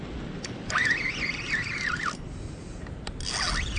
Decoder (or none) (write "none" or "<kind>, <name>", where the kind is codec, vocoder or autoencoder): none